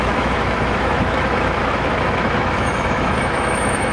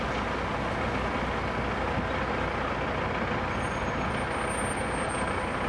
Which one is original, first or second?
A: second